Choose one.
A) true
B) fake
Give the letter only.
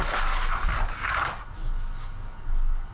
B